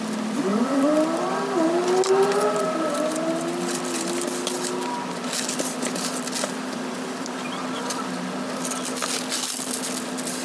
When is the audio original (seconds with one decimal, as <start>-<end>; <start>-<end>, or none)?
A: 0.0-0.5; 1.2-6.6; 7.6-10.4

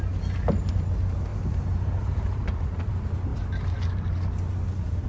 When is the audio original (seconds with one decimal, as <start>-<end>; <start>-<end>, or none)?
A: 0.0-1.3; 2.9-5.1

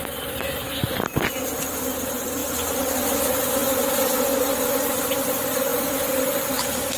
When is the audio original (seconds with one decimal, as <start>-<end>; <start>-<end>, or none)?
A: 0.0-2.4; 2.9-3.6; 4.3-7.0

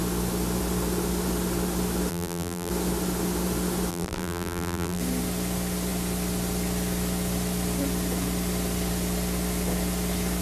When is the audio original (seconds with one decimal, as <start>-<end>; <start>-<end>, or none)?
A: 0.0-2.1; 2.7-3.9; 5.0-10.4

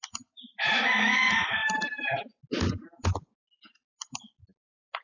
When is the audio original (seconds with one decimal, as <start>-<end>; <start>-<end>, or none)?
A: 0.0-5.0

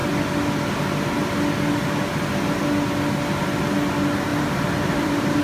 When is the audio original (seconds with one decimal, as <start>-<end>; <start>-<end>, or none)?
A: 0.0-4.3